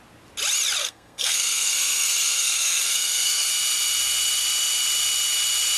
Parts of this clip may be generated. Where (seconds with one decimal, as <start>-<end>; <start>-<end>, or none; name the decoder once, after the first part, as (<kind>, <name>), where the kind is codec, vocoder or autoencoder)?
0.8-3.5 (codec, SNAC)